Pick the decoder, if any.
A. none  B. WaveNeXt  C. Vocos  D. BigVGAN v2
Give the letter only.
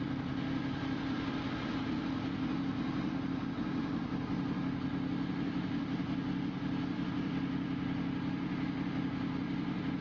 A